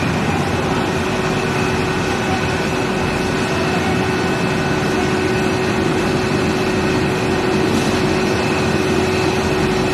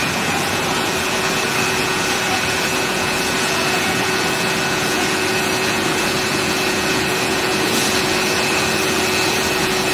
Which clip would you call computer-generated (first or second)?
second